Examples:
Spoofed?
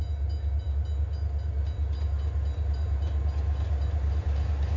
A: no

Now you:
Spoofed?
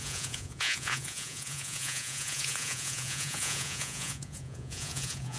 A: yes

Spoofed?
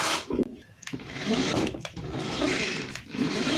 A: yes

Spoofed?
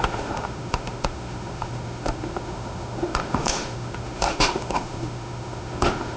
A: yes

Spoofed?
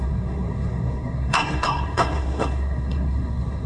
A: yes